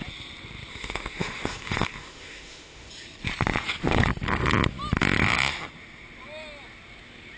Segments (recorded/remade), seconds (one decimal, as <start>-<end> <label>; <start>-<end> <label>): 0.0-0.7 recorded; 0.7-2.9 remade; 2.9-7.4 recorded